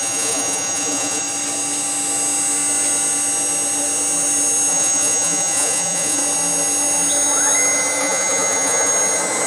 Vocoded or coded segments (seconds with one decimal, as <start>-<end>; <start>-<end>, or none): 0.0-1.2; 4.7-6.2; 8.0-8.9